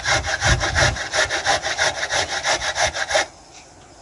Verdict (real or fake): real